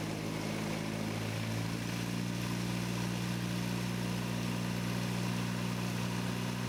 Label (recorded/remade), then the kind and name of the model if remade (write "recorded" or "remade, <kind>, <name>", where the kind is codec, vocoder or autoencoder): recorded